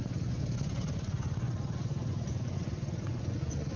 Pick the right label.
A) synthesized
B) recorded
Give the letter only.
A